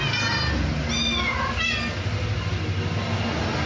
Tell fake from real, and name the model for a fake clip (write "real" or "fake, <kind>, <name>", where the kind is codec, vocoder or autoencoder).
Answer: real